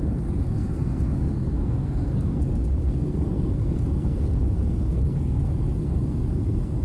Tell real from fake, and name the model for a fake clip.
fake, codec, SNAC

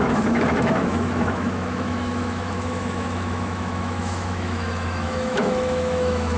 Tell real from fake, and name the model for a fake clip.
fake, autoencoder, DAC-VAE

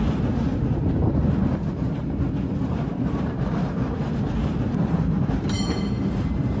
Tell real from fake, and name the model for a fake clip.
fake, vocoder, BigVGAN v2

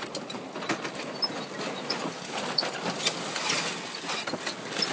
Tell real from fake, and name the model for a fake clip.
real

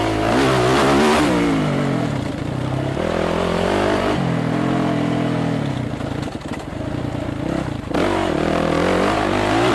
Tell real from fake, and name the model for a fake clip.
real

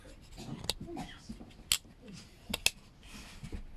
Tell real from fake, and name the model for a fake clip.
real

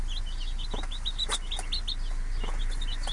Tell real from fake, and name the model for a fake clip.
real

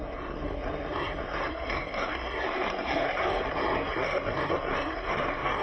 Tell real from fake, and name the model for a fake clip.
fake, codec, SNAC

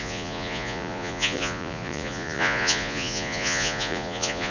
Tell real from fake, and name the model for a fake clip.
fake, vocoder, Vocos